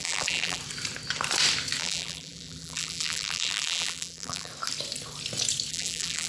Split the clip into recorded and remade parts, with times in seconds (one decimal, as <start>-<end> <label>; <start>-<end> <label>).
0.0-0.6 remade; 0.6-1.8 recorded; 1.8-4.5 remade; 4.5-5.7 recorded; 5.7-6.3 remade